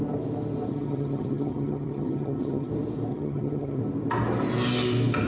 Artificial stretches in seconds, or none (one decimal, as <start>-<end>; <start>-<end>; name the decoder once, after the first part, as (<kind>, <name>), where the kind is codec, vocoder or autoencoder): 0.7-2.7 (vocoder, HiFi-GAN); 3.1-3.8